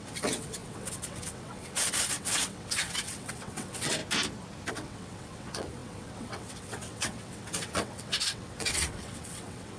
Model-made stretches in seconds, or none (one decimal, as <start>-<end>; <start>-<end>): 0.0-4.0; 4.7-9.8